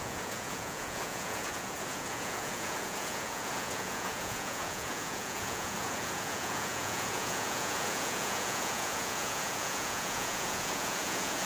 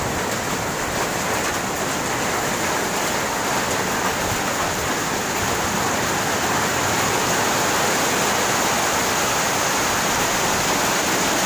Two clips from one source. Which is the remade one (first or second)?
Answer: first